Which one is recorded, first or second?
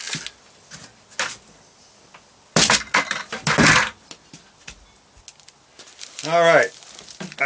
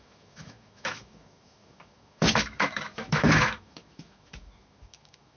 first